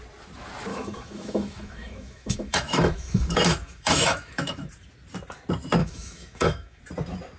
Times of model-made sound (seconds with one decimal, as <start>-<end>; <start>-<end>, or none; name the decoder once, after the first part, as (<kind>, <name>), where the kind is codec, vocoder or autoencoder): 0.7-4.7 (autoencoder, DAC-VAE); 5.8-6.8